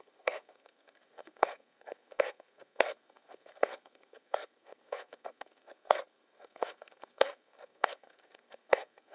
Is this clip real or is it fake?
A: fake